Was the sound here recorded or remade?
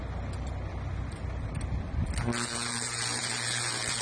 recorded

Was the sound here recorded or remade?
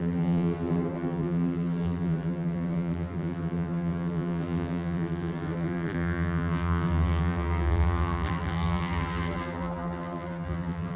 remade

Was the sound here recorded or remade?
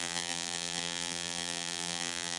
remade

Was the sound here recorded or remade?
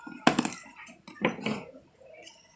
recorded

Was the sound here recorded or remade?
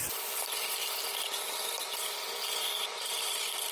remade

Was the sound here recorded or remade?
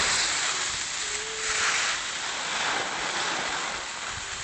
recorded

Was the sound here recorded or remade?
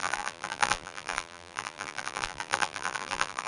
remade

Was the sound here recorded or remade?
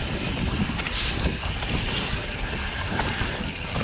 remade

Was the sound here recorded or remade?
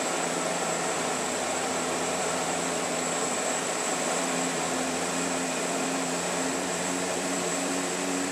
remade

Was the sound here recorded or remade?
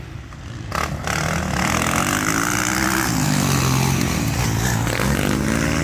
recorded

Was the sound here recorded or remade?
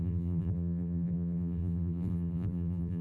remade